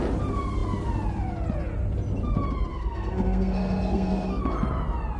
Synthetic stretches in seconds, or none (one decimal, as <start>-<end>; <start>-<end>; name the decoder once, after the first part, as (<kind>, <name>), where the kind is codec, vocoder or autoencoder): 2.7-4.4 (codec, SNAC)